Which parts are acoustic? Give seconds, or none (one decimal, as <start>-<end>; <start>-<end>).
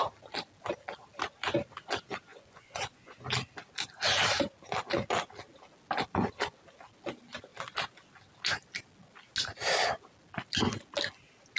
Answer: 0.0-2.3; 3.2-11.6